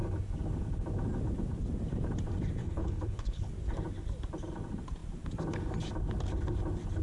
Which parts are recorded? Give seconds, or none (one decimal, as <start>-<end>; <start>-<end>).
0.0-2.6; 3.5-7.0